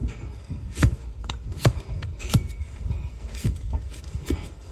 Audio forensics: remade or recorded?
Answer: remade